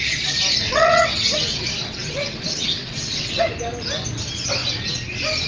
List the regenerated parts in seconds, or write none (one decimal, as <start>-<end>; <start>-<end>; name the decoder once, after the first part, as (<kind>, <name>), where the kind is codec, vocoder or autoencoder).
0.6-3.4 (vocoder, WaveNeXt)